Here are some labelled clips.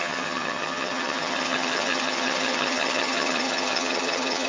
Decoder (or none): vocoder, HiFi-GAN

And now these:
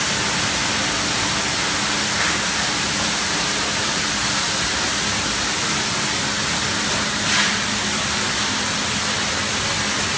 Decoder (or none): none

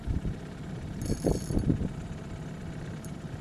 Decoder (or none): none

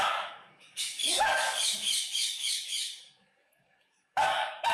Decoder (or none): codec, DAC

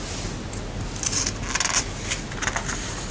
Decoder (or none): none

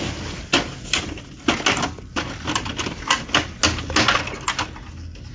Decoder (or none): none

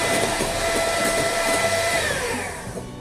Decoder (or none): vocoder, BigVGAN v2